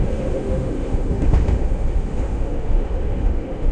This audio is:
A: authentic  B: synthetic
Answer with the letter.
B